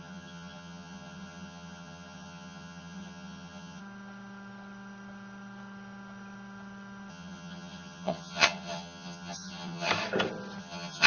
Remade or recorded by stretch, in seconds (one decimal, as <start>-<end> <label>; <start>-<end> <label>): 0.0-3.8 remade; 3.8-7.1 recorded; 7.1-9.9 remade; 9.9-10.6 recorded; 10.6-11.1 remade